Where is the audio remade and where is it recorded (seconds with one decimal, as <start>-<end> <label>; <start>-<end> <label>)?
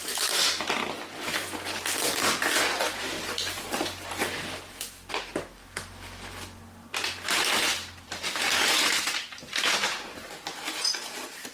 0.0-11.5 recorded